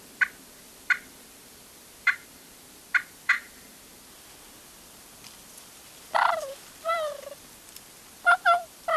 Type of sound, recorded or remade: remade